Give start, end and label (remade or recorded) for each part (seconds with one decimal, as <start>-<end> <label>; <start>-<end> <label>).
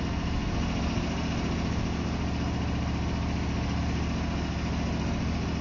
0.0-5.6 recorded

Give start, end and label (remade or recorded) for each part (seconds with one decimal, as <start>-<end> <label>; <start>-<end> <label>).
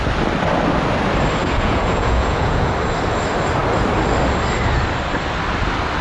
0.0-1.4 recorded; 1.4-2.7 remade; 2.7-6.0 recorded